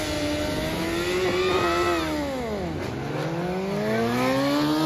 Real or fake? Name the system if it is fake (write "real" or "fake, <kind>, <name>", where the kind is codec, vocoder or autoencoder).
real